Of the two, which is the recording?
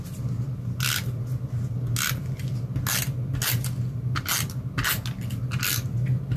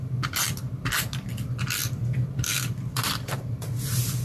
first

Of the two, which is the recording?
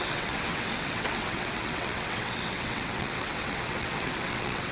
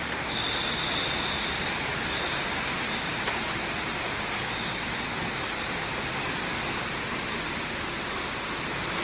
second